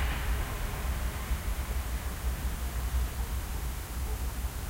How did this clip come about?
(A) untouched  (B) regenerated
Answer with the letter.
A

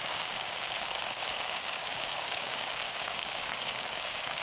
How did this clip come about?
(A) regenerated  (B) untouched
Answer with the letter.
A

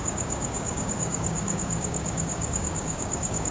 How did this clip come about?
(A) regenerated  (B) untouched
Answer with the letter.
A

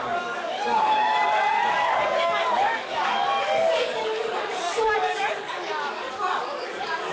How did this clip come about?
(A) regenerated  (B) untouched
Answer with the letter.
A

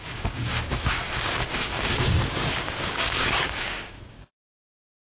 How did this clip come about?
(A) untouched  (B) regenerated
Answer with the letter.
B